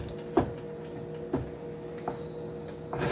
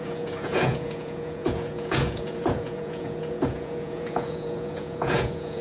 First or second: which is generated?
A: second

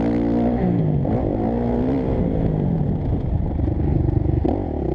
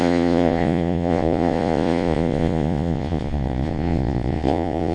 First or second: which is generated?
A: second